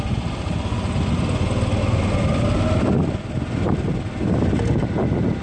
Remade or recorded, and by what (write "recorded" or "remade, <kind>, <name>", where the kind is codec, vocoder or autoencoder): recorded